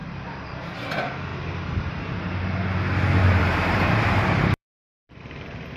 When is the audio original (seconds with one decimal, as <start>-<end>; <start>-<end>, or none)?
0.6-1.3; 2.0-3.2